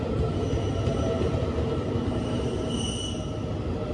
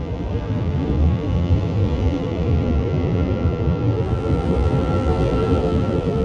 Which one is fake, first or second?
second